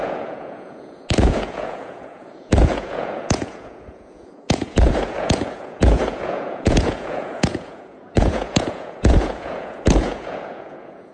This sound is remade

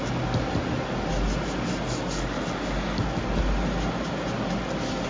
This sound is recorded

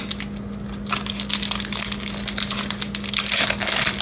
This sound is recorded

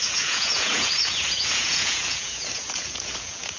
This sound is remade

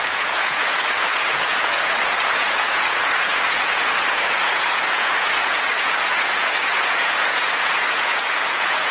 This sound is remade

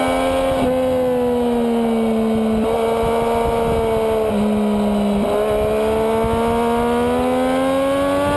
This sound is recorded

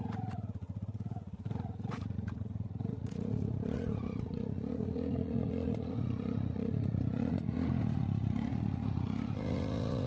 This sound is remade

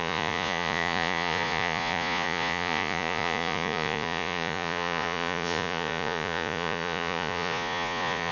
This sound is remade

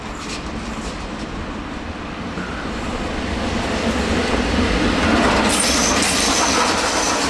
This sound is recorded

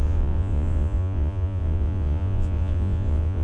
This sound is remade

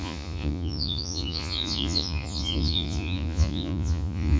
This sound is remade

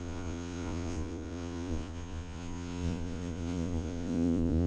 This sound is remade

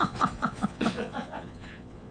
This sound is remade